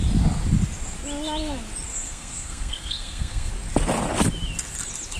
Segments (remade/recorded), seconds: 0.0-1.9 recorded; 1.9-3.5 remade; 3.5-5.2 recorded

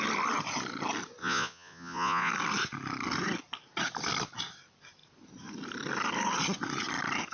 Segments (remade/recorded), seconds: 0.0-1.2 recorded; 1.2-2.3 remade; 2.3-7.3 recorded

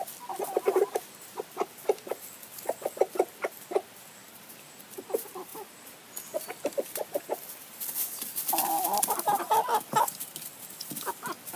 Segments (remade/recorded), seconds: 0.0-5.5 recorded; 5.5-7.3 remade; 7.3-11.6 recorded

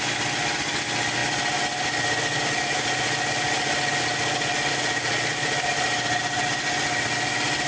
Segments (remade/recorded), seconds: 0.0-7.7 recorded

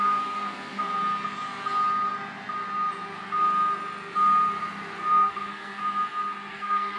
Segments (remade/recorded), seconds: 0.0-0.9 remade; 0.9-5.1 recorded; 5.1-5.8 remade; 5.8-6.5 recorded; 6.5-7.0 remade

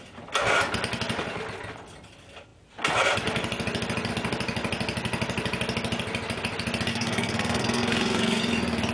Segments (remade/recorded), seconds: 0.0-6.9 recorded; 6.9-8.4 remade; 8.4-8.9 recorded